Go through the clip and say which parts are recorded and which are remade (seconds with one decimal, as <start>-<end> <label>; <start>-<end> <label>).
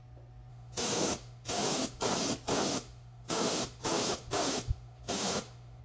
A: 0.0-0.5 recorded; 0.5-2.0 remade; 2.0-2.5 recorded; 2.5-5.8 remade